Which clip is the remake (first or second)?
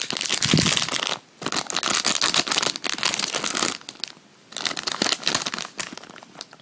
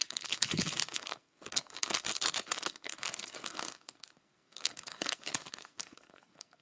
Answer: second